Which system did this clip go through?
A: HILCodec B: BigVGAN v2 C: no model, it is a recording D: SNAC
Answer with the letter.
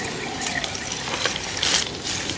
C